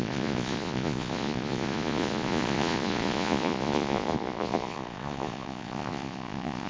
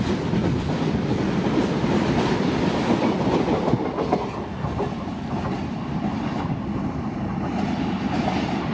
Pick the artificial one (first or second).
first